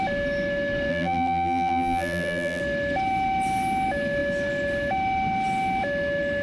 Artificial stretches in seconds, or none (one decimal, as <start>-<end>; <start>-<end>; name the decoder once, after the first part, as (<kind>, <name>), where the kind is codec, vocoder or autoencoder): 0.9-2.6 (vocoder, BigVGAN v2)